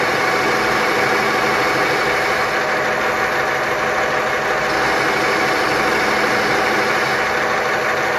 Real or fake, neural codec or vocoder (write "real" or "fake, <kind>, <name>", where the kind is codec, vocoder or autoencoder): real